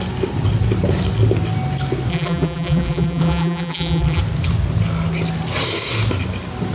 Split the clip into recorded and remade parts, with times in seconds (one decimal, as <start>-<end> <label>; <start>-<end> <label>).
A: 0.0-2.1 recorded; 2.1-4.2 remade; 4.2-6.7 recorded